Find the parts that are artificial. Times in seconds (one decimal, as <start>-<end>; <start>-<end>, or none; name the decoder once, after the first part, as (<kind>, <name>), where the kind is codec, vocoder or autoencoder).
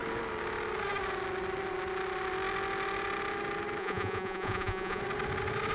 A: 3.8-5.0 (vocoder, Vocos)